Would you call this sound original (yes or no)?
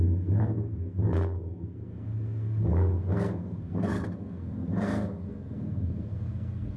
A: no